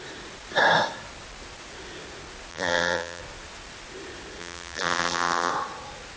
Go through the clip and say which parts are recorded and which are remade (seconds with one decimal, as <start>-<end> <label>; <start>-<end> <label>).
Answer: 0.0-2.5 recorded; 2.5-3.2 remade; 3.2-4.4 recorded; 4.4-5.5 remade; 5.5-6.2 recorded